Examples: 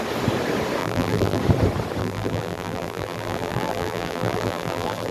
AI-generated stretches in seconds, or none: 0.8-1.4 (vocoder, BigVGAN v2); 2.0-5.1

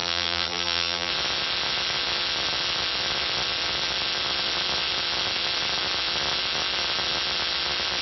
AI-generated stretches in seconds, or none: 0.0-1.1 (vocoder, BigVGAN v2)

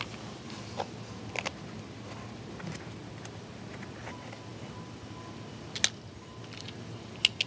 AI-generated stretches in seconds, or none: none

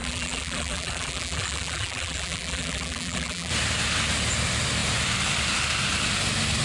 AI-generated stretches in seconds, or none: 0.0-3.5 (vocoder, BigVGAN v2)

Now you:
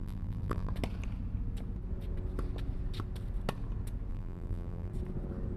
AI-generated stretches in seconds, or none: 0.0-0.7 (vocoder, BigVGAN v2); 4.1-4.9

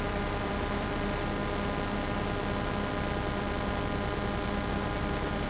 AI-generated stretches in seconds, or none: 0.0-1.4 (vocoder, BigVGAN v2); 4.7-5.5